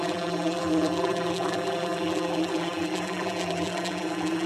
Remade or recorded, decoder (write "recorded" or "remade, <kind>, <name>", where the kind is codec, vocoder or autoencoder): remade, vocoder, BigVGAN v2